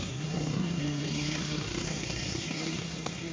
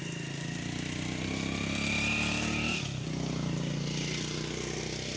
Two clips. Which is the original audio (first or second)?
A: second